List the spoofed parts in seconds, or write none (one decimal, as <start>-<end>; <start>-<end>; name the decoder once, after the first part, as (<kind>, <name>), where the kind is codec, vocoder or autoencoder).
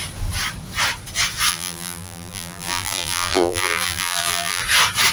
1.5-4.6 (vocoder, BigVGAN v2)